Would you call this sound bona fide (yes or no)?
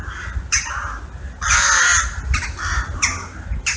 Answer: yes